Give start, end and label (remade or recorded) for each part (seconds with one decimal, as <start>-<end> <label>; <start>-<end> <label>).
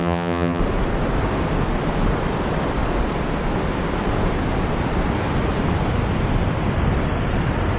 0.0-0.6 remade; 0.6-7.8 recorded